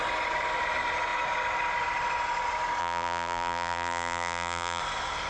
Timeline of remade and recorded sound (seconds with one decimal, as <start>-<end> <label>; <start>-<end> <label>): 0.0-2.8 recorded; 2.8-4.8 remade; 4.8-5.3 recorded